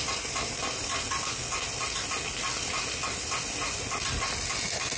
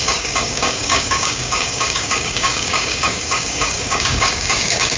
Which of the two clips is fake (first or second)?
second